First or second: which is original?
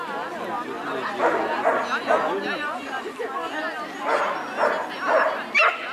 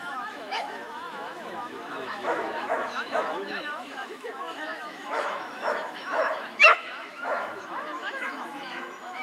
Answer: first